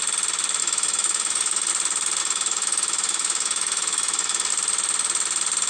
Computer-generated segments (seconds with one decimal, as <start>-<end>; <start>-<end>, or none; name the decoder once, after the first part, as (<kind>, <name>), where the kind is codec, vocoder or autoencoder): 0.6-1.7 (autoencoder, DAC-VAE); 2.2-4.5